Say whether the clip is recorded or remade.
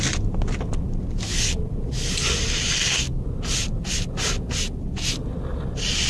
recorded